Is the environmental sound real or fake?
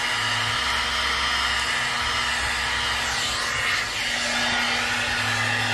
real